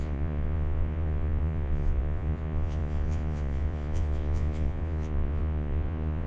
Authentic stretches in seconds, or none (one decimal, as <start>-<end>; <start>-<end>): none